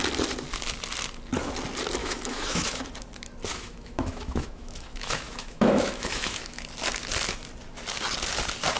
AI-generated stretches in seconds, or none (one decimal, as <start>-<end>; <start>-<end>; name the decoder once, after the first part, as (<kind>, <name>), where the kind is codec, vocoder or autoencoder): 2.0-2.8 (autoencoder, DAC-VAE); 3.5-6.6